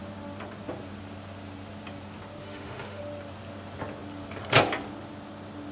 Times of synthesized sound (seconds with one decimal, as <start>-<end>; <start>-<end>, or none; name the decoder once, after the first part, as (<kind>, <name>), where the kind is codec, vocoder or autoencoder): 2.4-3.0 (autoencoder, DAC-VAE)